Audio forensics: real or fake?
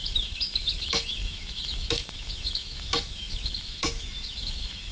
fake